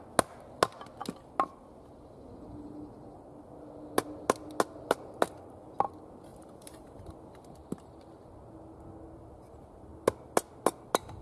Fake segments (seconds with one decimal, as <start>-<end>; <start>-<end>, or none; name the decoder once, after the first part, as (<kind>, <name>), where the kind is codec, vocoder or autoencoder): 6.3-7.1 (vocoder, BigVGAN v2)